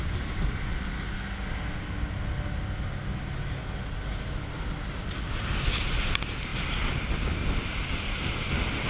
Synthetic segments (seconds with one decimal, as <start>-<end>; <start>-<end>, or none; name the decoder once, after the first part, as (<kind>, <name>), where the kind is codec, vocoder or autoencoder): 6.5-7.9 (vocoder, BigVGAN v2)